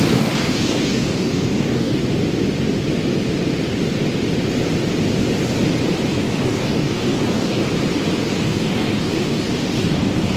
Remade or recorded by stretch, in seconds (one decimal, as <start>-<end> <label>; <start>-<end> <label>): 0.0-2.0 remade; 2.0-6.1 recorded; 6.1-7.6 remade; 7.6-8.2 recorded; 8.2-10.4 remade